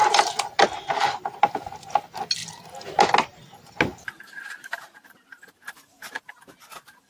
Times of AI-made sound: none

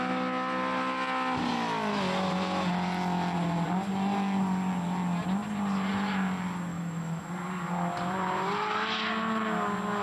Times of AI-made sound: 6.7-7.3 (autoencoder, DAC-VAE)

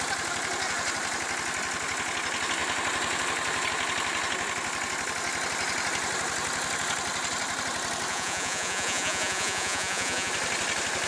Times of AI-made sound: 8.1-10.3 (vocoder, Vocos)

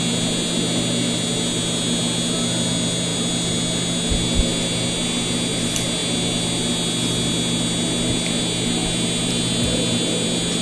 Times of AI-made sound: none

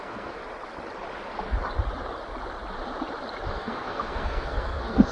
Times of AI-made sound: 0.0-0.4 (codec, SNAC); 3.5-5.1

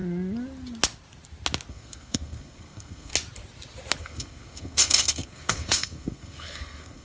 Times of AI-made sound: 1.7-3.1 (codec, SNAC); 4.0-7.0

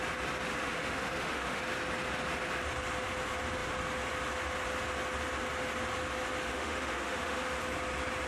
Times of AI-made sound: 0.5-1.6 (autoencoder, DAC-VAE); 6.5-7.4

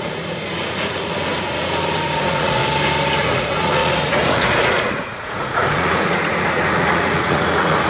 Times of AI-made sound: 0.0-2.6 (vocoder, Vocos); 3.2-7.9